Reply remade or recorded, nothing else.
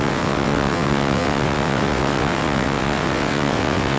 remade